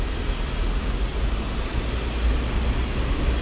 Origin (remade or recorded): recorded